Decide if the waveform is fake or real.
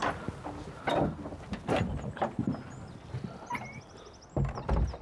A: real